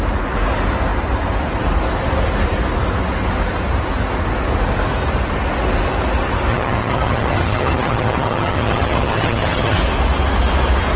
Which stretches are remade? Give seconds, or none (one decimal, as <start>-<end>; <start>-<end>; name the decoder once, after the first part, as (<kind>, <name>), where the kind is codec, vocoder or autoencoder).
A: 6.5-9.8 (vocoder, HiFi-GAN)

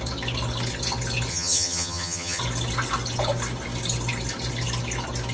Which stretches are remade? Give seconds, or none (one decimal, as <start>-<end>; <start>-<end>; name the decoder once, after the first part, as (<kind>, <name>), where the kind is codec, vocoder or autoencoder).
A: 1.3-2.4 (vocoder, HiFi-GAN)

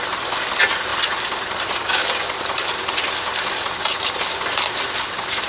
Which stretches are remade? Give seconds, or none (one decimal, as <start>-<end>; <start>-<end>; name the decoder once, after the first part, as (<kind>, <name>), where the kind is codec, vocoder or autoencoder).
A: none

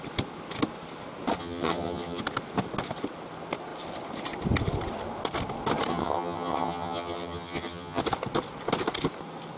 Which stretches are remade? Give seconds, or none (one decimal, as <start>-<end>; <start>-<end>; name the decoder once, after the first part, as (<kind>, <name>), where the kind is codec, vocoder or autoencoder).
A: 1.4-2.2 (vocoder, HiFi-GAN); 5.9-8.0

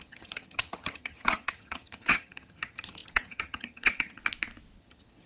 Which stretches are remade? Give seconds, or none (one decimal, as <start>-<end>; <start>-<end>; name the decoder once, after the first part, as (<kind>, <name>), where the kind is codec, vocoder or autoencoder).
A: 0.0-4.2 (vocoder, HiFi-GAN); 4.8-5.3

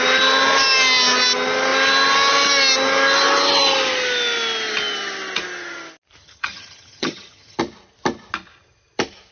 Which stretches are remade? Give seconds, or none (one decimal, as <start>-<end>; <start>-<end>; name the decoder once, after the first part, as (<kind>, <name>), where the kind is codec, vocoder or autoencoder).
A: 6.2-7.6 (vocoder, HiFi-GAN)